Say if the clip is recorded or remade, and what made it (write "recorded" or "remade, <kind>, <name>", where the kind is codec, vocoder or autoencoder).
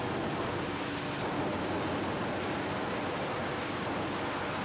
recorded